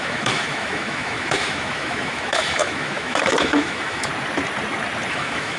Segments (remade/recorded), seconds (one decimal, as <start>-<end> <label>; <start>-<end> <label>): 0.0-4.1 remade; 4.1-5.1 recorded; 5.1-5.6 remade